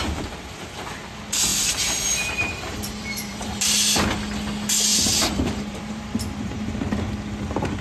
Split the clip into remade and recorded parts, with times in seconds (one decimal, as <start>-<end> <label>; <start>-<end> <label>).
0.0-1.5 recorded; 1.5-3.7 remade; 3.7-4.9 recorded; 4.9-6.8 remade; 6.8-7.8 recorded